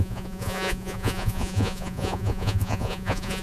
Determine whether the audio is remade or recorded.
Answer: remade